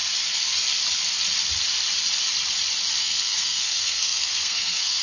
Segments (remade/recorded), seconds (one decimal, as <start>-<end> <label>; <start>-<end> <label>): 0.0-3.0 recorded; 3.0-5.0 remade